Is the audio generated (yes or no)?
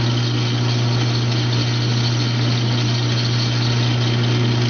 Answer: no